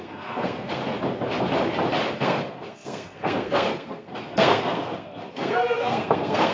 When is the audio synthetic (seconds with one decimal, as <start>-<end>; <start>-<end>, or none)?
0.0-0.8; 2.2-6.5